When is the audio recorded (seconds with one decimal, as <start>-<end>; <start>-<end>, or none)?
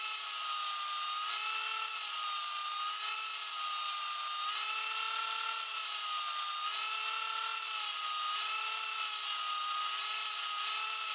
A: 0.0-11.1